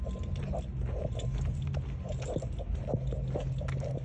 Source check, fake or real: real